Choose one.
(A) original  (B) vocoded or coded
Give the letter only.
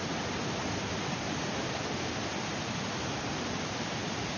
A